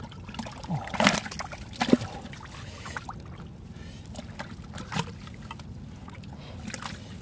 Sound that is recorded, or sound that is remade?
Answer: recorded